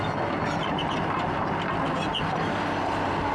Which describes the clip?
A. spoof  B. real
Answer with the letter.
B